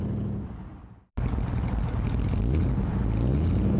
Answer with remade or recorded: remade